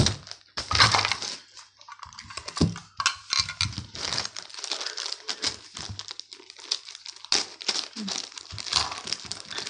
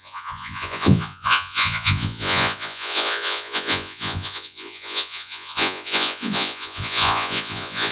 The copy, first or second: second